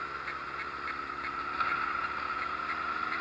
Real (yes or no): no